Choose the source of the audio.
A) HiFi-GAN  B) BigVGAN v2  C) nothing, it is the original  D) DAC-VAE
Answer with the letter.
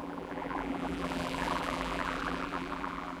B